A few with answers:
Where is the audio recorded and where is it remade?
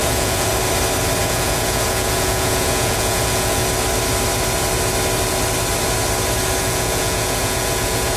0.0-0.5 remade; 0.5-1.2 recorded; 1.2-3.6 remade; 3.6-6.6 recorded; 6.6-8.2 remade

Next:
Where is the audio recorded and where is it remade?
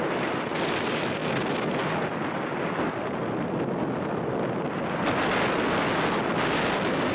0.0-7.1 recorded